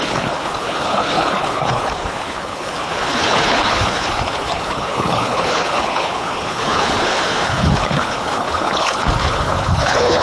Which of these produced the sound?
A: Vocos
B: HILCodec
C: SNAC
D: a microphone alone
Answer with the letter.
B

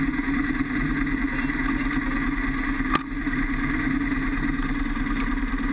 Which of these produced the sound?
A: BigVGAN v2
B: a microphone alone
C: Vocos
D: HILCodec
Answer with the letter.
B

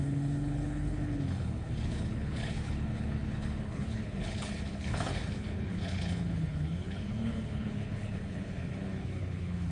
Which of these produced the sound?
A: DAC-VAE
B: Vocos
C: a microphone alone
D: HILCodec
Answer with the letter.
D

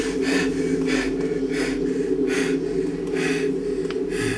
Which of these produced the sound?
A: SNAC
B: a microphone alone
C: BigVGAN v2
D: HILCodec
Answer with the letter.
B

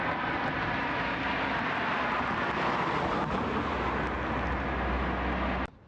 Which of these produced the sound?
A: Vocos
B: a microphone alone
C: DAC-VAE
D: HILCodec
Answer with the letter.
B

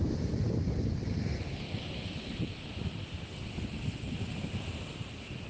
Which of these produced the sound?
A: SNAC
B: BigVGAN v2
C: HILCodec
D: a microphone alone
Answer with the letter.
D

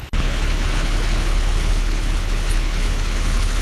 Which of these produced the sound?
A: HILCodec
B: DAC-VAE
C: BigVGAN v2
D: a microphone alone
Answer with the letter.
A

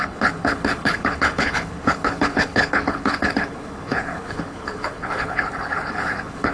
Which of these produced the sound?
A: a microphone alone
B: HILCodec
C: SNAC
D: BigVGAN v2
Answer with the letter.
B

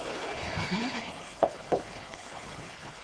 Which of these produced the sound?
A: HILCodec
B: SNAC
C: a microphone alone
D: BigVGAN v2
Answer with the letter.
A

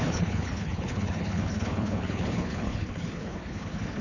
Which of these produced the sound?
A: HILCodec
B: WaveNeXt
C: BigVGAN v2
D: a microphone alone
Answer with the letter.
A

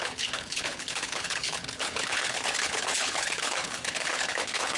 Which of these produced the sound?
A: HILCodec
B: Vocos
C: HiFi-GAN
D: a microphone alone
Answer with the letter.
A